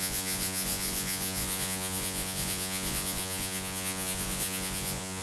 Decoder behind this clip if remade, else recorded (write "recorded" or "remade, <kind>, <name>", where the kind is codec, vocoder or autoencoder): remade, vocoder, Vocos